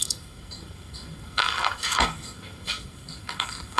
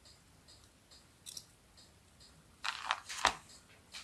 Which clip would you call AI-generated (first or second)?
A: first